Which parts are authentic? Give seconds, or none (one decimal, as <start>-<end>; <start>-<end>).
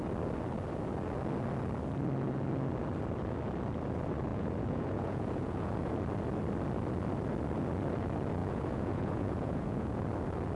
0.0-4.3; 5.9-8.4; 10.0-10.6